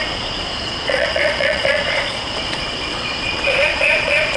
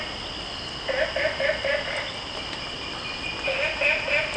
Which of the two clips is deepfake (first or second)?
first